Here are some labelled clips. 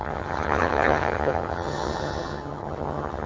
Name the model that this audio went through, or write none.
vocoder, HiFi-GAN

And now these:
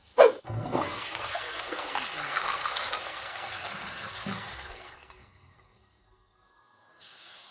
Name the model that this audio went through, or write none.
codec, SNAC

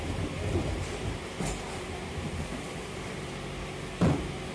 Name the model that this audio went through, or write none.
none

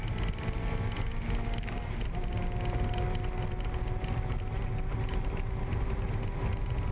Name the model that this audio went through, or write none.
none